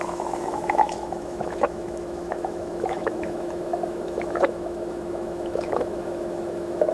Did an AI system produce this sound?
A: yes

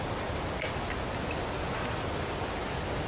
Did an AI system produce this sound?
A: no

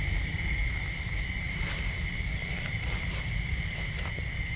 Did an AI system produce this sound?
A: yes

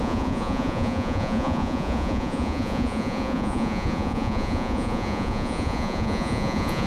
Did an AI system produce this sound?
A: yes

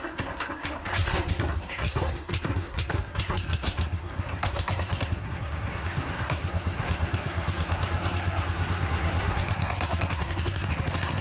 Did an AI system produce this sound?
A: yes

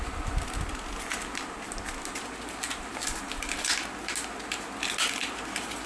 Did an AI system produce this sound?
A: no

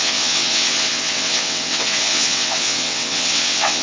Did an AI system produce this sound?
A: yes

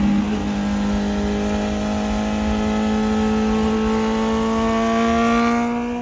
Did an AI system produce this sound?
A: no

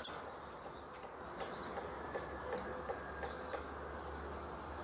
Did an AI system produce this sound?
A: no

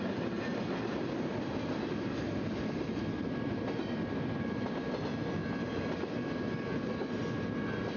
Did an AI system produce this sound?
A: no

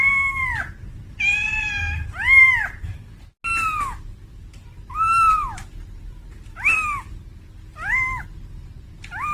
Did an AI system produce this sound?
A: no